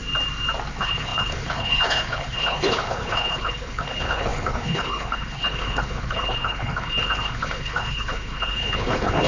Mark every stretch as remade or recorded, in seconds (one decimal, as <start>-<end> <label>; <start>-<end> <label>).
0.0-0.7 recorded; 0.7-9.3 remade